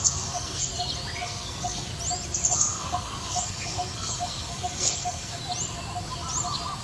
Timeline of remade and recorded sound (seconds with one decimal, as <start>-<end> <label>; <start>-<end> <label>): 0.0-0.7 remade; 0.7-1.2 recorded; 1.2-1.9 remade; 1.9-2.5 recorded; 2.5-5.4 remade; 5.4-6.8 recorded

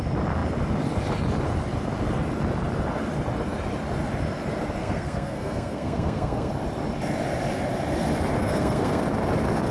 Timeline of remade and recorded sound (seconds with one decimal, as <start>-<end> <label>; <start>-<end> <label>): 0.0-4.8 recorded; 4.8-6.5 remade; 6.5-8.4 recorded; 8.4-9.0 remade; 9.0-9.7 recorded

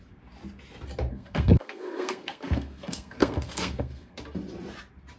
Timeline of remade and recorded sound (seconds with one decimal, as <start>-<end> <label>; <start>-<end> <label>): 0.0-1.1 recorded; 1.1-4.2 remade; 4.2-5.2 recorded

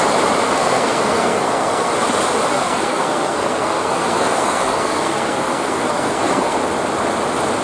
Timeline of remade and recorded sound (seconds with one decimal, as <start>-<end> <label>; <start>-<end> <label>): 0.0-0.6 recorded; 0.6-1.9 remade; 1.9-2.5 recorded; 2.5-6.6 remade; 6.6-7.6 recorded

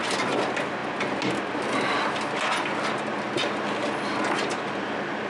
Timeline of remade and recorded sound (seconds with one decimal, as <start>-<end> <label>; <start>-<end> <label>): 0.0-5.3 recorded

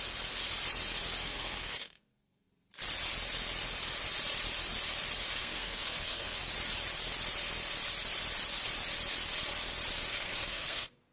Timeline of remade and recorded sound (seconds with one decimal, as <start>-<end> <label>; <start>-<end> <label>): 0.0-1.2 recorded; 1.2-2.5 remade; 2.5-5.4 recorded; 5.4-6.4 remade; 6.4-10.1 recorded; 10.1-11.1 remade

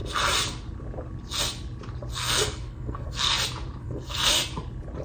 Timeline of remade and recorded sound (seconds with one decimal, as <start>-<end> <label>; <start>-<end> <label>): 0.0-2.1 recorded; 2.1-3.3 remade; 3.3-3.8 recorded; 3.8-4.3 remade; 4.3-5.0 recorded